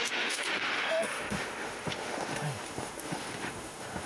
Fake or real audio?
fake